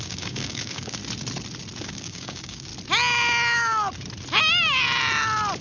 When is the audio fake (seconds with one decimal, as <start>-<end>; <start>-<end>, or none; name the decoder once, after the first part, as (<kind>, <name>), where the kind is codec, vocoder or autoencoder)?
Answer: 0.0-1.0 (codec, DAC); 1.8-2.7